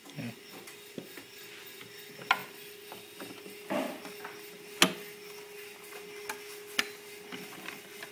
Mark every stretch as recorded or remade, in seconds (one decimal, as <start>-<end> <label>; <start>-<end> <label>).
0.0-8.1 recorded